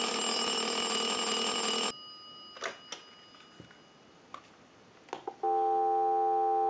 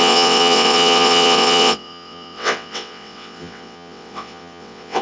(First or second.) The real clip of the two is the first